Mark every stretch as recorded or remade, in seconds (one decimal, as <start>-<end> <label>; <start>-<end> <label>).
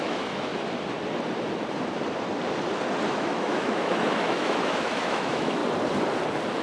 0.0-0.5 remade; 0.5-3.1 recorded; 3.1-5.6 remade; 5.6-6.6 recorded